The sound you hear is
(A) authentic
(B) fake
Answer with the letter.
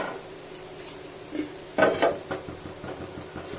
A